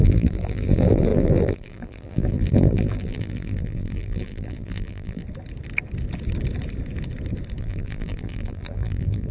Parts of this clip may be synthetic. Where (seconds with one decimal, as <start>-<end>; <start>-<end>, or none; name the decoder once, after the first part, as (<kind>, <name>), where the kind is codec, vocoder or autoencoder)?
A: 0.0-5.2 (vocoder, BigVGAN v2); 7.6-9.3